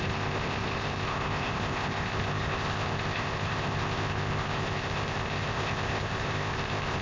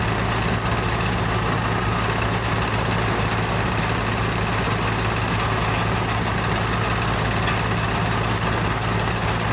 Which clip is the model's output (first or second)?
first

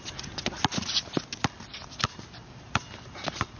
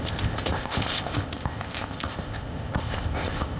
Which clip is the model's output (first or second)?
second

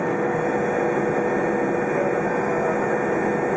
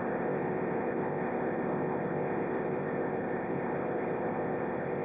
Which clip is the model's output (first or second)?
second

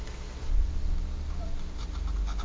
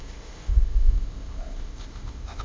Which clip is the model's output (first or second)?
second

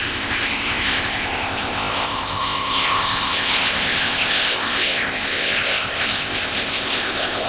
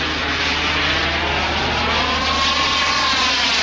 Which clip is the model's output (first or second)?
first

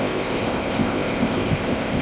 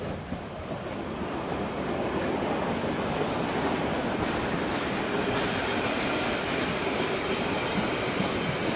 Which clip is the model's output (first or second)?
first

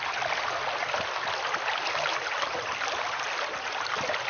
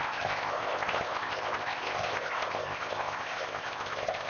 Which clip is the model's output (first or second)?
second